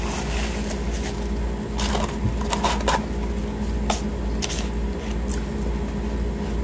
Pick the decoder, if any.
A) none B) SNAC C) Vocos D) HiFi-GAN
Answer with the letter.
A